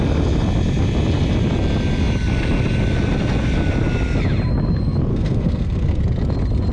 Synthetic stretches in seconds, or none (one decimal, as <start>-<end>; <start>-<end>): 5.1-6.0